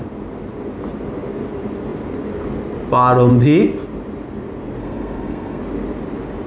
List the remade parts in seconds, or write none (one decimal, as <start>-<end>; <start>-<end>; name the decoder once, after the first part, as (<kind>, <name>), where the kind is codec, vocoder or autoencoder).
4.8-5.6 (codec, SNAC)